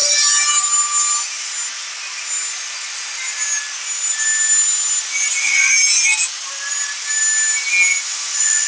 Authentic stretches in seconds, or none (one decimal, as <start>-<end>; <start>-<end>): 0.0-8.1